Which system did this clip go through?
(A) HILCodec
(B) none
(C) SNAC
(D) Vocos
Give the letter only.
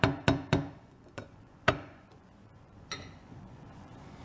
D